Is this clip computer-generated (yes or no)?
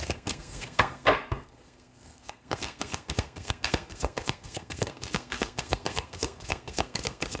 yes